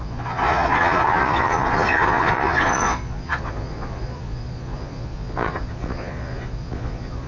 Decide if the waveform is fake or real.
fake